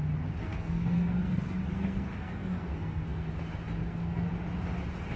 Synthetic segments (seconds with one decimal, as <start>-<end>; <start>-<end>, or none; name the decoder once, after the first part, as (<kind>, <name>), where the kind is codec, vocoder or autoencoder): 0.4-3.3 (codec, SNAC); 3.8-4.3